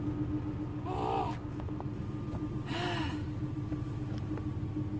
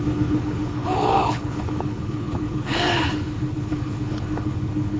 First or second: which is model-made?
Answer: second